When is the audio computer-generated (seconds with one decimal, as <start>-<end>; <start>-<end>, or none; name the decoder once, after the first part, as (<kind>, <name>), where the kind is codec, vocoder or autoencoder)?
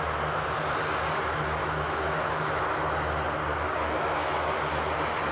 1.6-2.6 (autoencoder, DAC-VAE); 3.5-4.5